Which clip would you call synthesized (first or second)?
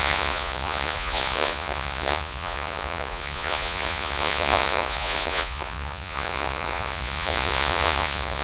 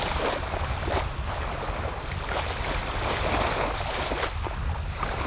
first